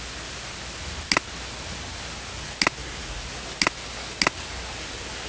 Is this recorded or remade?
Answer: recorded